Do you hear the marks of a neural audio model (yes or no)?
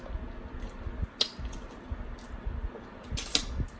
no